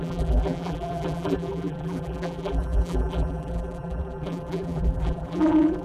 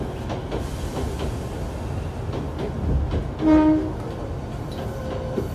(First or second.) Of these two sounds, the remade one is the first